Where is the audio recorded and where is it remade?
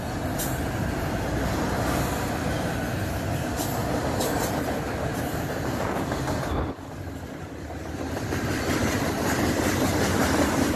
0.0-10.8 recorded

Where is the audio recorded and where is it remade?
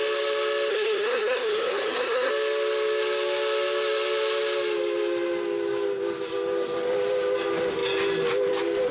0.0-0.7 recorded; 0.7-2.3 remade; 2.3-8.9 recorded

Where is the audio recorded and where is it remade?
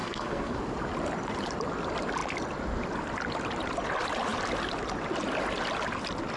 0.0-0.6 remade; 0.6-6.4 recorded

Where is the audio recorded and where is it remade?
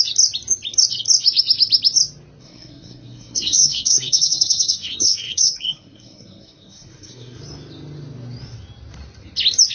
0.0-2.4 recorded; 2.4-7.4 remade; 7.4-9.7 recorded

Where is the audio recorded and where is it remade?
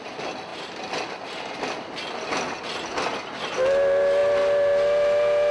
0.0-5.5 recorded